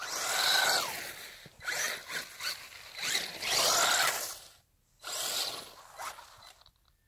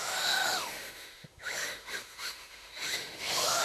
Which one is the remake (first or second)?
second